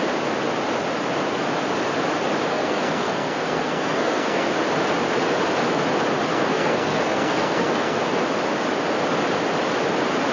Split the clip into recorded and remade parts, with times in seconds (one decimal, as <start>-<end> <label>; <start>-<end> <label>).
0.0-2.5 recorded; 2.5-4.5 remade; 4.5-6.3 recorded; 6.3-8.0 remade; 8.0-10.3 recorded